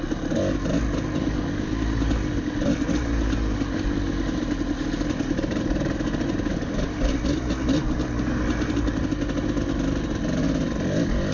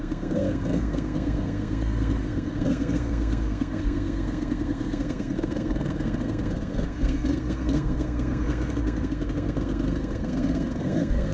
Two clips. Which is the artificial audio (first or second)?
second